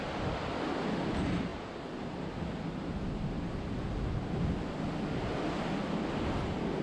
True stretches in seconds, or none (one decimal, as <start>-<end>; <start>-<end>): 0.0-6.8